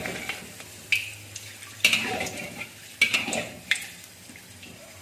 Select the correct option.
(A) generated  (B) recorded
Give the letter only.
B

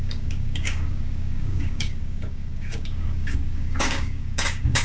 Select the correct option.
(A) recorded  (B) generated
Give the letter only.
B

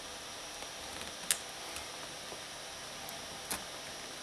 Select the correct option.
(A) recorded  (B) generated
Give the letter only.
A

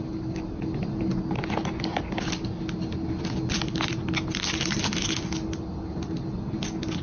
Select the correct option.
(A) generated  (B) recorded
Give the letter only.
B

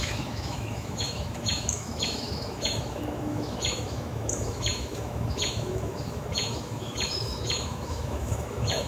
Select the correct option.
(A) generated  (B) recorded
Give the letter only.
A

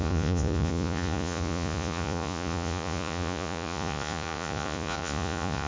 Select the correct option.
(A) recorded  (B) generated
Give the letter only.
B